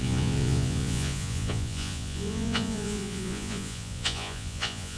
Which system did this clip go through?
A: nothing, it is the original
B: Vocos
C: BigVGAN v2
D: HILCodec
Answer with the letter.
B